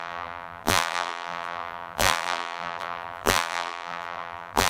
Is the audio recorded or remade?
remade